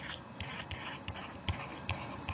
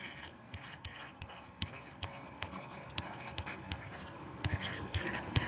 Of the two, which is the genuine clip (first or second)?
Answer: first